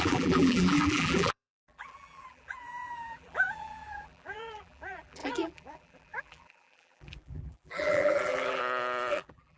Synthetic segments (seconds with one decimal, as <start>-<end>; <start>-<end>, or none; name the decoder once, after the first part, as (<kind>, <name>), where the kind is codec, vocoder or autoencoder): 0.0-8.6 (vocoder, BigVGAN v2); 9.1-9.6